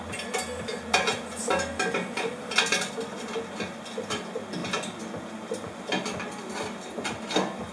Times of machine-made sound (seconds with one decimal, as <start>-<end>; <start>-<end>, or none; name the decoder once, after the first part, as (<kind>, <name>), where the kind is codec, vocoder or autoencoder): none